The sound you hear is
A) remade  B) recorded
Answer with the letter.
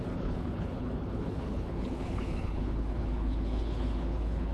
A